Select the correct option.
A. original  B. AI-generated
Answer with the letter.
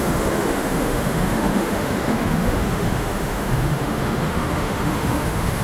B